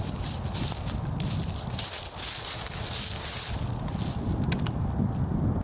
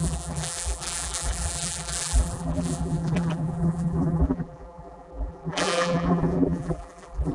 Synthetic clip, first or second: second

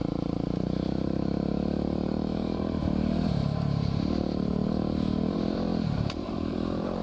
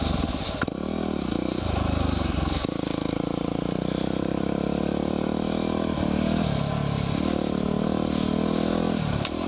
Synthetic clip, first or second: first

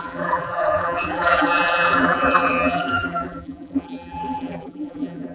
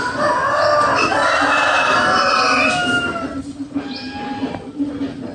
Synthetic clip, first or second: first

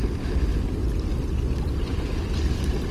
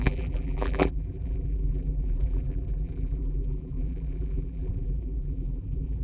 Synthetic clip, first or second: second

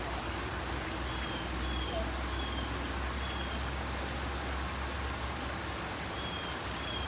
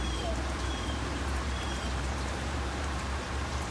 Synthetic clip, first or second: second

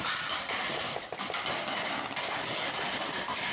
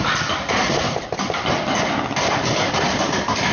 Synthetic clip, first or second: second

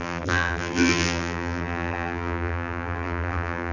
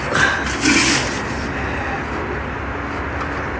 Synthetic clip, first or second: first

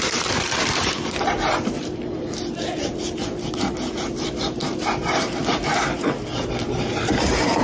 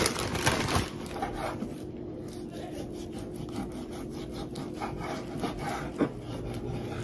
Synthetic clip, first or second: first